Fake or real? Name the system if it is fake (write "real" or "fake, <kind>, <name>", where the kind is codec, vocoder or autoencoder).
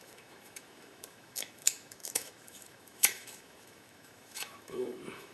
fake, autoencoder, DAC-VAE